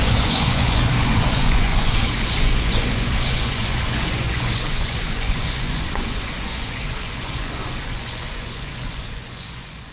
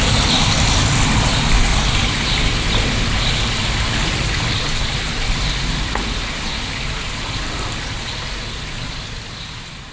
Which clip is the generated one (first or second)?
first